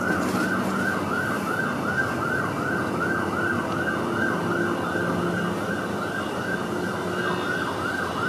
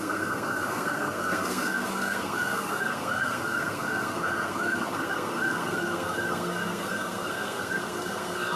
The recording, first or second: first